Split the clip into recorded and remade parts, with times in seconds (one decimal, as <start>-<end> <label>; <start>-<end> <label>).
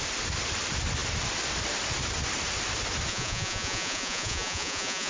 0.0-3.1 recorded; 3.1-5.1 remade